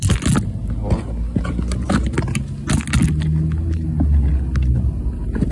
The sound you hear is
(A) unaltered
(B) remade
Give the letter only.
A